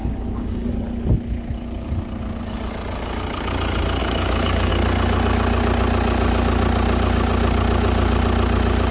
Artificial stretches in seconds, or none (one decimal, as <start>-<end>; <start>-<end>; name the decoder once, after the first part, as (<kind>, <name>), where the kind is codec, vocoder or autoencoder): 0.0-0.7 (codec, DAC); 4.0-4.7